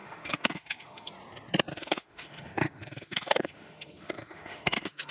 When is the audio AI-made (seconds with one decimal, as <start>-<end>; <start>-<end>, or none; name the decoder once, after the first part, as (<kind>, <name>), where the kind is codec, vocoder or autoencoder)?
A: 0.0-1.1 (autoencoder, DAC-VAE); 1.7-5.1